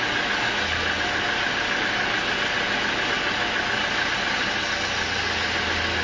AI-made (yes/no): no